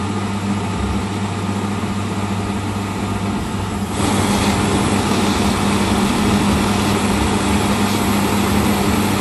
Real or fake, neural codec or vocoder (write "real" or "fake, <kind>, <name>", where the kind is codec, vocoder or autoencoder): real